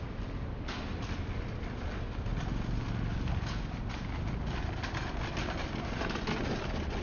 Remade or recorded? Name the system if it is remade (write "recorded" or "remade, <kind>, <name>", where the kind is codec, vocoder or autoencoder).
recorded